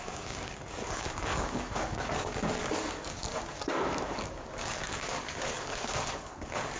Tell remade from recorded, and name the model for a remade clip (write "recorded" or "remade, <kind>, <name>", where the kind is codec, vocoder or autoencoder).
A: remade, codec, DAC